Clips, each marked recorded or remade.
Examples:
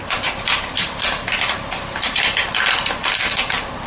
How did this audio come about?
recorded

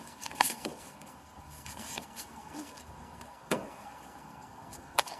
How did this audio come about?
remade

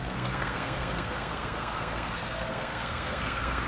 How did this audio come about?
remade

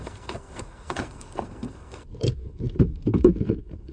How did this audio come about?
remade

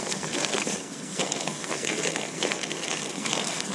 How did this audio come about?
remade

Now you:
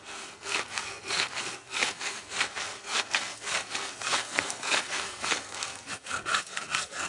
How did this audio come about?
remade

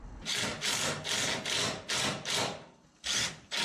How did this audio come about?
recorded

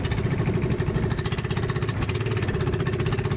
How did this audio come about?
recorded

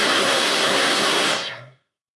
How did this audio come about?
remade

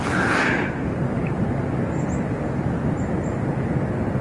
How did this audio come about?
recorded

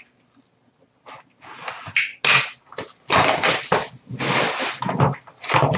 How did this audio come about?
recorded